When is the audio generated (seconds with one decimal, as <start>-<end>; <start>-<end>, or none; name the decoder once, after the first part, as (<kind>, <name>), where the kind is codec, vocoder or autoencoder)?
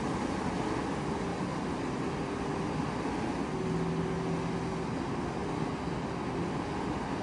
1.3-1.8 (vocoder, BigVGAN v2)